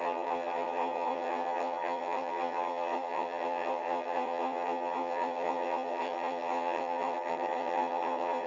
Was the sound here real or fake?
fake